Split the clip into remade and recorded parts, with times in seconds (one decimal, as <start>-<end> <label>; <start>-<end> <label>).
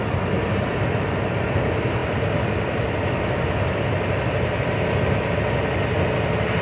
0.0-6.6 recorded